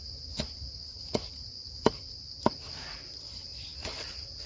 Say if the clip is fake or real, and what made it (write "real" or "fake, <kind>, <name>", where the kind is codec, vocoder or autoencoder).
real